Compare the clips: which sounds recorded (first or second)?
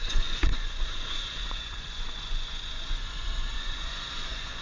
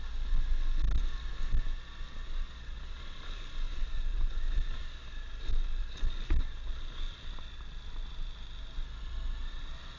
second